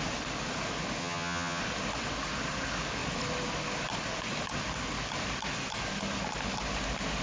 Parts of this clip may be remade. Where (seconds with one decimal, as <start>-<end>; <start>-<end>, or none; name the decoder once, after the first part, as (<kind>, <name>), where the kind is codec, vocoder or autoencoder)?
1.0-1.6 (vocoder, HiFi-GAN)